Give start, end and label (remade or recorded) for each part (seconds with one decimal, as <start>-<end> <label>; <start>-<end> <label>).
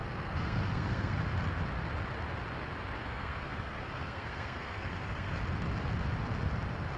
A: 0.0-1.2 remade; 1.2-3.0 recorded; 3.0-5.4 remade; 5.4-7.0 recorded